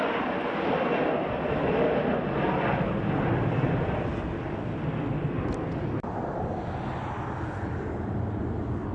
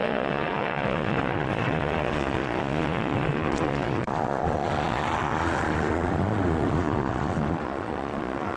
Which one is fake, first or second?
second